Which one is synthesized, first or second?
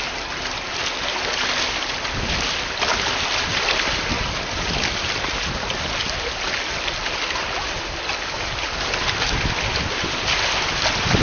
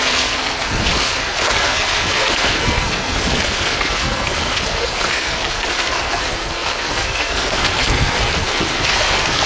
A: second